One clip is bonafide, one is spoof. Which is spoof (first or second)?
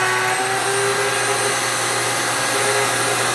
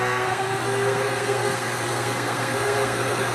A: second